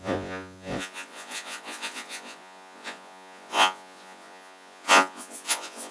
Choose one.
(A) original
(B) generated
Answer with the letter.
B